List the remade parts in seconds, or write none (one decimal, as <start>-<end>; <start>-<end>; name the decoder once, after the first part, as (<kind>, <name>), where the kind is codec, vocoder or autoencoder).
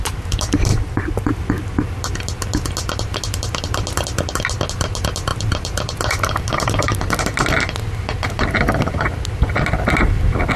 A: 0.7-1.3 (vocoder, BigVGAN v2); 5.3-7.2